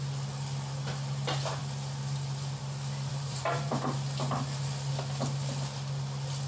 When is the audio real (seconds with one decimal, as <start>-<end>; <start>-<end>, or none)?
0.0-3.1; 3.8-6.5